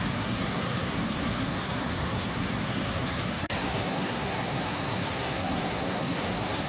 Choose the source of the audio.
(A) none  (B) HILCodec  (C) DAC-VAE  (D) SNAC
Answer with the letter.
D